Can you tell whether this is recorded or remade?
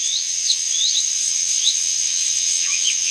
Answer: remade